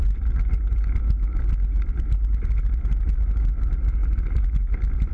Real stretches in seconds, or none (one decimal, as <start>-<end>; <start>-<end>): 0.0-5.1